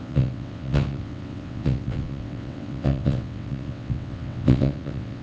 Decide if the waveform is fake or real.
fake